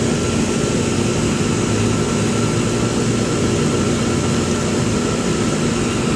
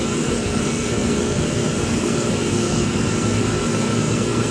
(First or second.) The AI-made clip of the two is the second